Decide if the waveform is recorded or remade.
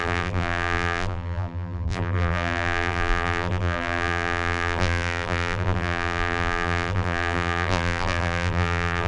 remade